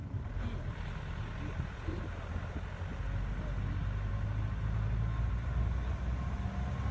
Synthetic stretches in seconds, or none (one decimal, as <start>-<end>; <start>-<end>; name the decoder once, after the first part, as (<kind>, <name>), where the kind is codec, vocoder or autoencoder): none